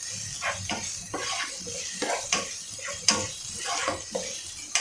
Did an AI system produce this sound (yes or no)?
no